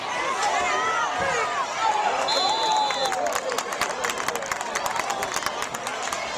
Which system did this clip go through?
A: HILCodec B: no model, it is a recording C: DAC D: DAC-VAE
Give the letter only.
B